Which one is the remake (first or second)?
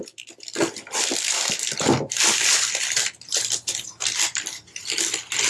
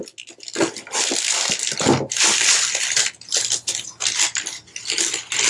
first